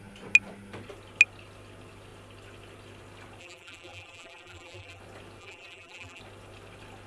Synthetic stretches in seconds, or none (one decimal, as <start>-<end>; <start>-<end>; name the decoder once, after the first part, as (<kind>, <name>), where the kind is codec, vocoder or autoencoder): 3.4-5.0 (vocoder, BigVGAN v2); 5.4-6.2

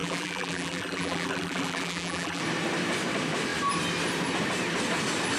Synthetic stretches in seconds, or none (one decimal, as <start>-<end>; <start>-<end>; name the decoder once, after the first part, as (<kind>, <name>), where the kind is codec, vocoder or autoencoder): 0.0-2.4 (vocoder, BigVGAN v2)

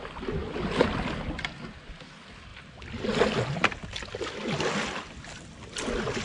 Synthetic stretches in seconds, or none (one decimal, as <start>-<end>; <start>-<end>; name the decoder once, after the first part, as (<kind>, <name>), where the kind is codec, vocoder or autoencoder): none